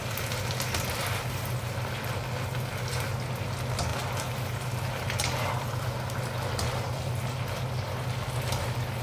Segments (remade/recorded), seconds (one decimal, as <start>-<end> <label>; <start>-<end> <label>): 0.0-0.5 remade; 0.5-9.0 recorded

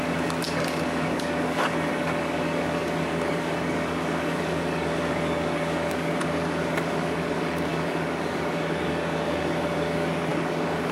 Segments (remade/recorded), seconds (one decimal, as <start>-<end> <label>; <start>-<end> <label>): 0.0-10.9 remade